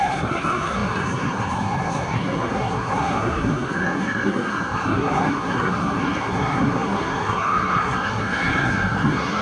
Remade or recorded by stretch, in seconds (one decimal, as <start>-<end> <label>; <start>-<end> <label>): 0.0-9.4 remade